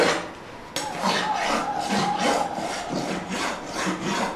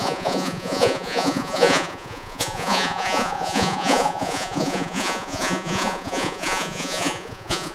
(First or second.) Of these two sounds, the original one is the first